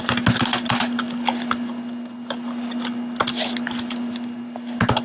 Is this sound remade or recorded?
recorded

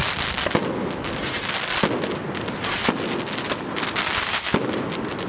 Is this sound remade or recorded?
recorded